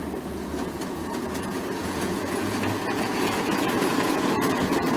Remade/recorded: remade